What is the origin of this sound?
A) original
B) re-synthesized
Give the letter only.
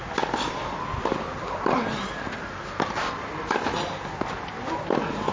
A